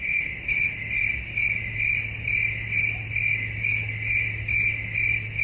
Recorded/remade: recorded